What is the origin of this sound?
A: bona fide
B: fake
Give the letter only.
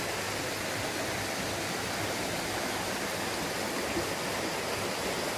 A